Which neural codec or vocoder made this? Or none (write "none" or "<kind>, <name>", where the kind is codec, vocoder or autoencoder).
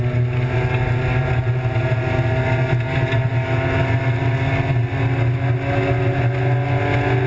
none